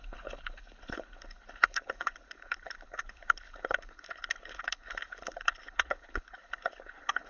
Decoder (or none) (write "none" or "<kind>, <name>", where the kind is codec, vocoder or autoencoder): codec, HILCodec